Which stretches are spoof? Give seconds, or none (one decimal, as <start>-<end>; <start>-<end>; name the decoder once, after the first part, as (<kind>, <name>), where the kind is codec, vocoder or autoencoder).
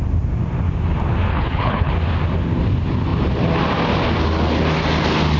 1.3-1.9 (codec, HILCodec)